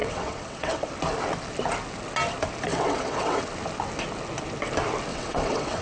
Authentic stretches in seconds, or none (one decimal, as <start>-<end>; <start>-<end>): 0.9-2.7; 3.4-5.1